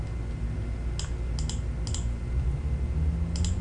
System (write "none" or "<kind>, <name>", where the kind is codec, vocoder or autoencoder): none